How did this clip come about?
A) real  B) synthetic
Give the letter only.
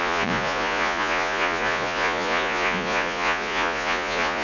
B